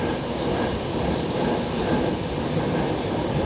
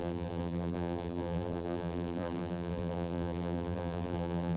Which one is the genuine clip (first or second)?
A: first